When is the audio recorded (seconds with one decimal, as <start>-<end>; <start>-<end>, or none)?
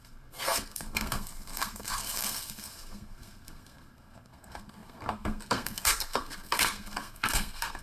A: none